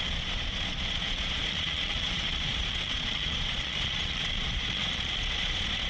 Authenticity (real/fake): fake